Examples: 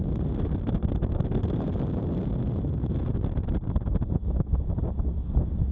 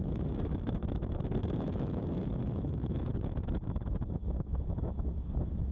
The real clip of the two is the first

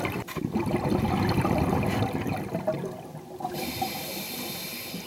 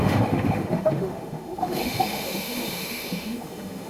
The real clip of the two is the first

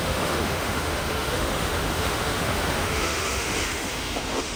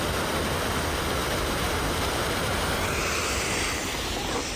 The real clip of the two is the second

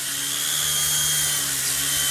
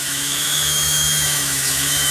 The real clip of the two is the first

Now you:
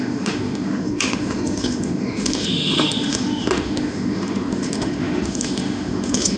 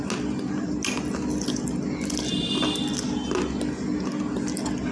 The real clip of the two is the second